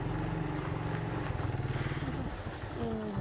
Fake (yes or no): no